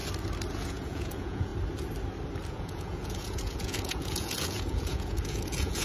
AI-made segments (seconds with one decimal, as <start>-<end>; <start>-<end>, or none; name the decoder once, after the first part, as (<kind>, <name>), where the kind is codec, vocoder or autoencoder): 0.5-1.5 (vocoder, Vocos); 2.5-5.8